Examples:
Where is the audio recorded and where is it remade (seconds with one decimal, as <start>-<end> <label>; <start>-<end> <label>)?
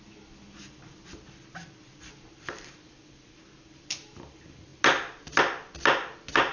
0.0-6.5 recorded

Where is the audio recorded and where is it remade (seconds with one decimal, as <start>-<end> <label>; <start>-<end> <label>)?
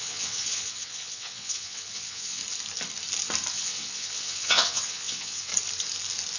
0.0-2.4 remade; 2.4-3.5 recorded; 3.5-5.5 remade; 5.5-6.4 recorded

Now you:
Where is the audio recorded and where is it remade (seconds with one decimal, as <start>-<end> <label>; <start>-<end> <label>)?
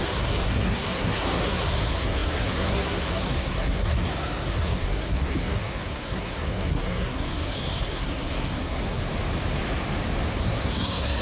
0.0-9.0 remade; 9.0-10.4 recorded; 10.4-11.2 remade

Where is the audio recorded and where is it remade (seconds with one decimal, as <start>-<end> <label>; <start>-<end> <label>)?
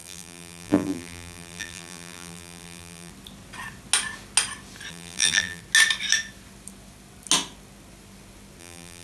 0.0-3.1 remade; 3.1-4.9 recorded; 4.9-5.6 remade; 5.6-8.6 recorded; 8.6-9.0 remade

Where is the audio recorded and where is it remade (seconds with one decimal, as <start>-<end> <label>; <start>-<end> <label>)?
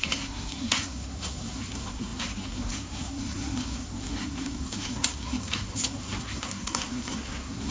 0.0-7.7 remade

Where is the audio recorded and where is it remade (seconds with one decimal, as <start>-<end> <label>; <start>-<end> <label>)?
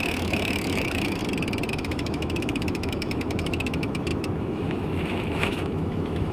0.0-1.2 remade; 1.2-1.7 recorded; 1.7-6.3 remade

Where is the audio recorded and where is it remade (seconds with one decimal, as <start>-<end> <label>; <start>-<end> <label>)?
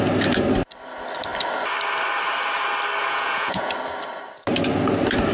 0.0-3.0 recorded; 3.0-3.7 remade; 3.7-5.3 recorded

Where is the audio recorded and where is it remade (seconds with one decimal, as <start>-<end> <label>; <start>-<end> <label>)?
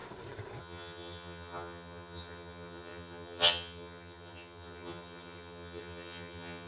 0.0-0.6 recorded; 0.6-6.7 remade